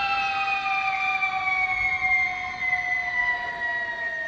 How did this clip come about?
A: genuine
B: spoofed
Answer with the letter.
A